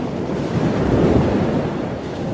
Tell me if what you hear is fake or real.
real